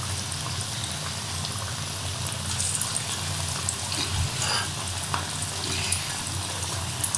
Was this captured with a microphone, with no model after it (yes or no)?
yes